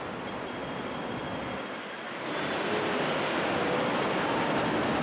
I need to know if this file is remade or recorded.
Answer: recorded